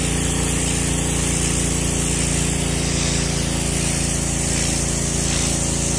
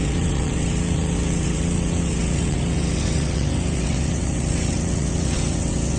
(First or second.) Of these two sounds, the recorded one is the first